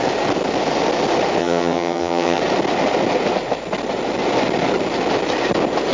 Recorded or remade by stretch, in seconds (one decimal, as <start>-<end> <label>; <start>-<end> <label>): 0.0-1.4 recorded; 1.4-2.4 remade; 2.4-5.9 recorded